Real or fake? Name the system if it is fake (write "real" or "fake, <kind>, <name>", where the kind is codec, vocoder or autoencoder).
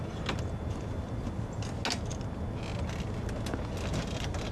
real